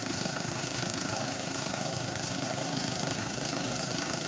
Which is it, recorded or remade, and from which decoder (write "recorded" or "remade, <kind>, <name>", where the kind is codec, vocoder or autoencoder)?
remade, codec, SNAC